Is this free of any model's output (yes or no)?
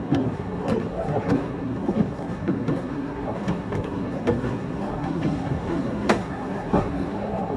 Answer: no